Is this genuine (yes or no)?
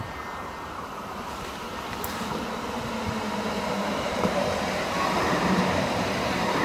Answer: no